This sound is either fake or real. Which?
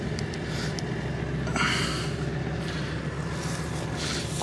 real